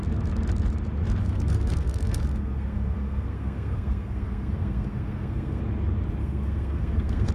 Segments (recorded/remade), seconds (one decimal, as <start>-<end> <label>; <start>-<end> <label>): 0.0-1.2 recorded; 1.2-5.6 remade; 5.6-6.2 recorded; 6.2-7.3 remade